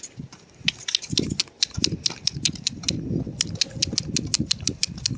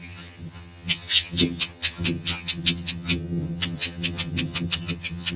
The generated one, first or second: second